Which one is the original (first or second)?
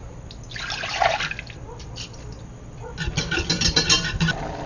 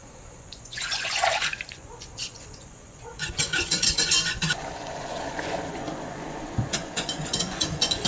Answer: first